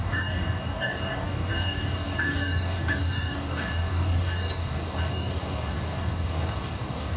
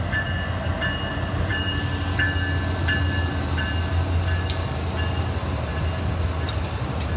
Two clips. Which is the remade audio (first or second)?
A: first